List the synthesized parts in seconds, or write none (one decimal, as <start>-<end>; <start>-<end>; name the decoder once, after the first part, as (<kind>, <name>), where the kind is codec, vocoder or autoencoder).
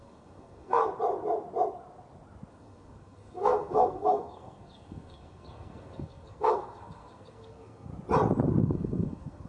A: 0.0-0.8 (codec, SNAC); 2.5-7.9; 8.6-9.5